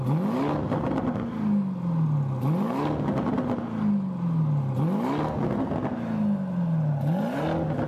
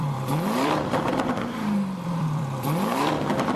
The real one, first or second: first